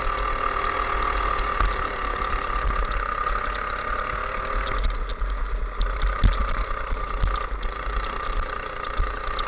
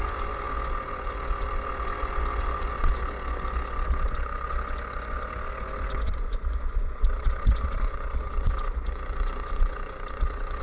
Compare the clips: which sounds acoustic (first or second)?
first